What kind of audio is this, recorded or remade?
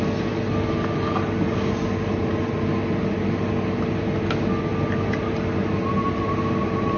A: recorded